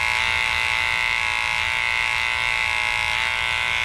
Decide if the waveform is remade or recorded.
recorded